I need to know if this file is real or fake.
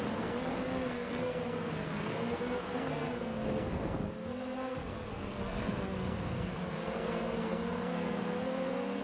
fake